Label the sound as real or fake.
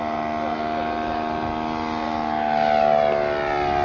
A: real